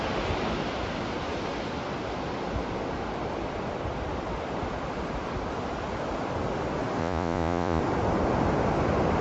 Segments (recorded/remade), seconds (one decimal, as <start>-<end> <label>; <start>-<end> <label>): 0.0-7.0 recorded; 7.0-7.8 remade; 7.8-9.2 recorded